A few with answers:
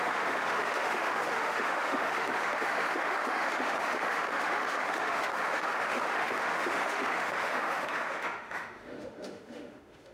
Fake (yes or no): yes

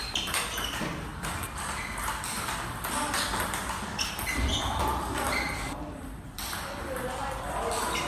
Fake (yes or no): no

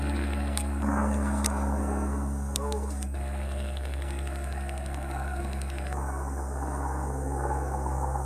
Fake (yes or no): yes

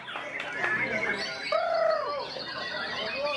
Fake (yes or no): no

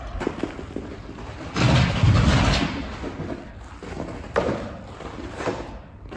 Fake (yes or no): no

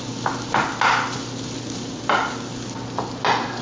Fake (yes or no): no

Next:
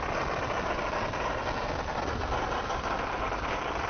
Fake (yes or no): no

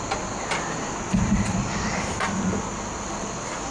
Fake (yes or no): no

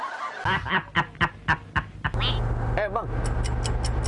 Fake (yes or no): no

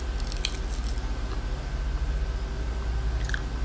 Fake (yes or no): no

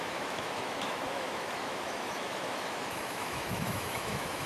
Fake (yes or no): yes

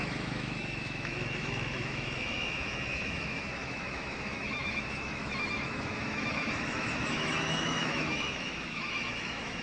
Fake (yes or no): yes